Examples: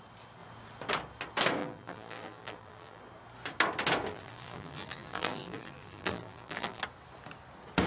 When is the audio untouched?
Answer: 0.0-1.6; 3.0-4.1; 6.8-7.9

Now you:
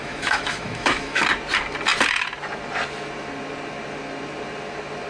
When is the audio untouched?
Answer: 1.2-5.1

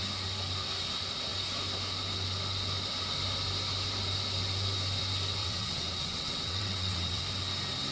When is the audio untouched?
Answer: 0.0-5.4; 7.2-7.9

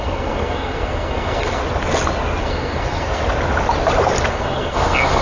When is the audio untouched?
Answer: 1.6-2.4; 3.2-4.3

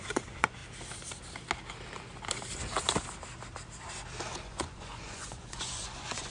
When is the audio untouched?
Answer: 0.6-4.4

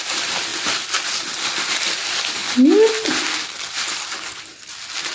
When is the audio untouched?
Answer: 0.0-5.1